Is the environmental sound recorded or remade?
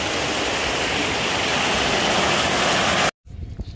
recorded